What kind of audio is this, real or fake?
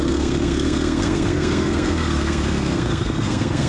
fake